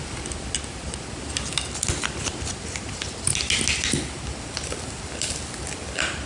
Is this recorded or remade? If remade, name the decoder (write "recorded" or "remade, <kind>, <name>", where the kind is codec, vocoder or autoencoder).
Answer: recorded